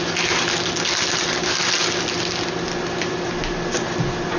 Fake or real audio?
real